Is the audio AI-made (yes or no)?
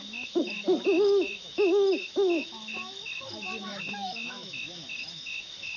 yes